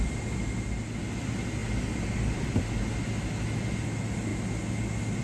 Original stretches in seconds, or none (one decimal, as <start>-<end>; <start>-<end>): 0.0-5.2